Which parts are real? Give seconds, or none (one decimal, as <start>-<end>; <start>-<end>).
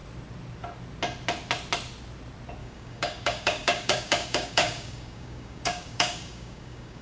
0.0-2.6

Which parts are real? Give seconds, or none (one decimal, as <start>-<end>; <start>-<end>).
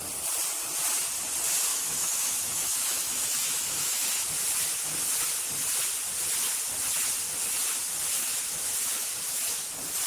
0.0-1.7; 4.2-8.2; 9.7-10.1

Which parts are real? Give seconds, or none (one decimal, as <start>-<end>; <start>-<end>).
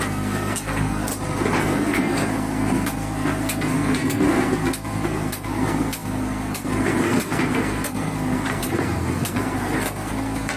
1.1-1.6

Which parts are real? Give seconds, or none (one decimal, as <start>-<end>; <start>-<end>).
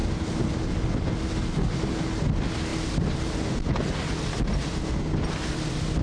0.0-6.0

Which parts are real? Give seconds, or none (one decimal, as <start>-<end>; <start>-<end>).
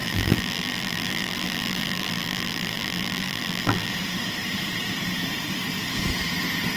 3.9-6.8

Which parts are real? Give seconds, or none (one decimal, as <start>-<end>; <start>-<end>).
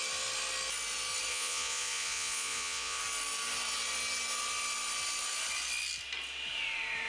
0.0-1.3; 3.0-7.1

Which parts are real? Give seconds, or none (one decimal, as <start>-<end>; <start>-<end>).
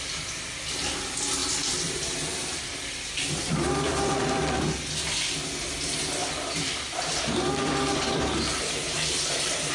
0.0-1.4; 4.6-6.2; 8.1-8.5